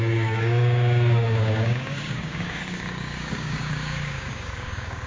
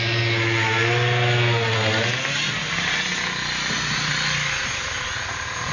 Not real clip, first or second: first